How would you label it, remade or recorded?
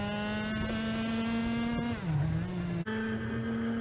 recorded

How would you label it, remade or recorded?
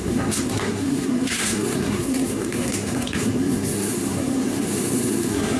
remade